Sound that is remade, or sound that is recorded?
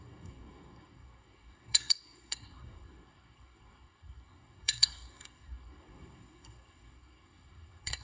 remade